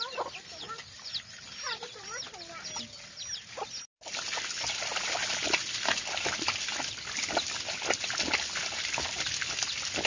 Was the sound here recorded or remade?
recorded